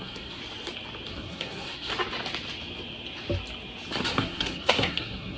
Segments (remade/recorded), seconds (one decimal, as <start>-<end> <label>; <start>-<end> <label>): 0.0-0.4 remade; 0.4-1.1 recorded; 1.1-1.9 remade; 1.9-4.1 recorded; 4.1-5.4 remade